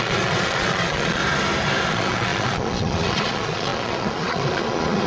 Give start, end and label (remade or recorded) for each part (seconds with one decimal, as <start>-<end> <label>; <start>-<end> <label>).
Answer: 0.0-1.2 remade; 1.2-1.9 recorded; 1.9-5.1 remade